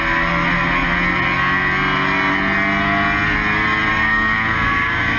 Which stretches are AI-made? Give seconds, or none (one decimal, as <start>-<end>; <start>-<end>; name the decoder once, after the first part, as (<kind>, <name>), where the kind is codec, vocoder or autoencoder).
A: 3.9-5.2 (codec, DAC)